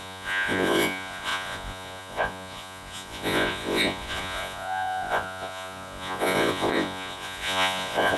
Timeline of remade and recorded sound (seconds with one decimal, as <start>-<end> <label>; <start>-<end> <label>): 0.0-8.2 remade